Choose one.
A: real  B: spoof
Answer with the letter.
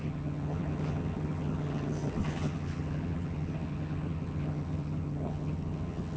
B